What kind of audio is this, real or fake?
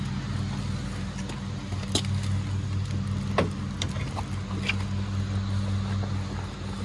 real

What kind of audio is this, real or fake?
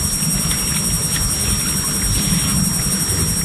real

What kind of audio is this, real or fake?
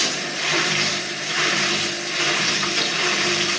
fake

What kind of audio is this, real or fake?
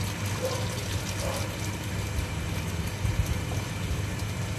real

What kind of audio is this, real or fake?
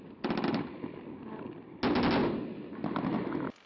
real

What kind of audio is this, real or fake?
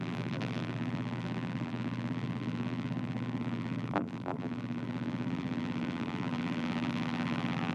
fake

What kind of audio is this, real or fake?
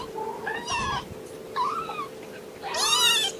real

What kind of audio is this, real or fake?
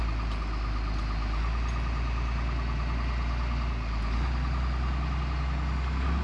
real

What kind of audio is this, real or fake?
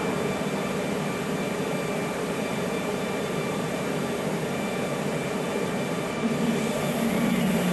fake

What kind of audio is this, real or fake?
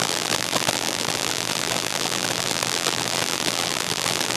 fake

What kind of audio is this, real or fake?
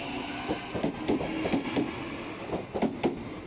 real